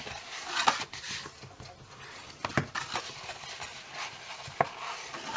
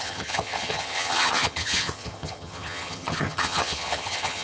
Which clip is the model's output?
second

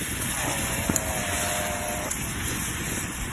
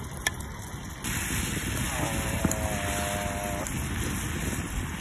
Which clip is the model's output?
first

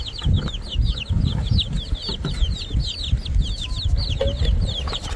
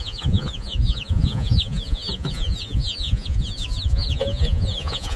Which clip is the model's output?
second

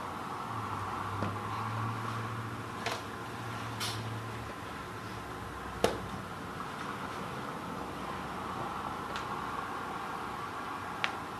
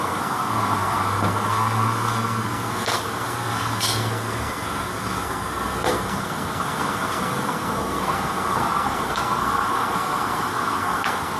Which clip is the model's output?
second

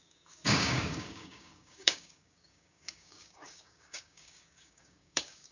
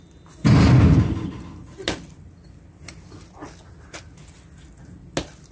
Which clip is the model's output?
first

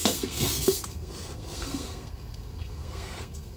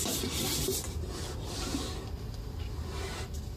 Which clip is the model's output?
first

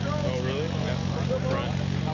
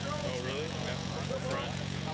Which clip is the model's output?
second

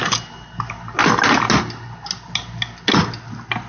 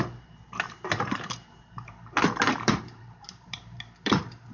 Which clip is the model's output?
second